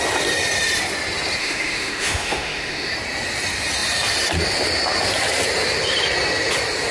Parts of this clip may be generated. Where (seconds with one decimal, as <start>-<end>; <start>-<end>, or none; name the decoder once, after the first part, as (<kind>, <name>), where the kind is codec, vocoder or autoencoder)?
1.4-2.9 (autoencoder, DAC-VAE)